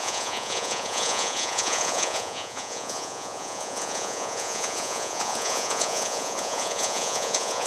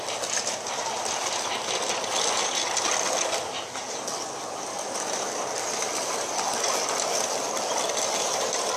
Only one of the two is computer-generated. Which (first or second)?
first